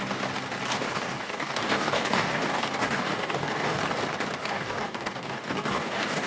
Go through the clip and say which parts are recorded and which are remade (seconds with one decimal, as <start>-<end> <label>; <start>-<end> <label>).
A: 0.0-0.7 recorded; 0.7-3.8 remade; 3.8-4.4 recorded; 4.4-6.3 remade